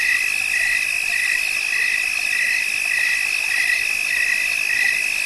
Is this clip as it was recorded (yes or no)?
yes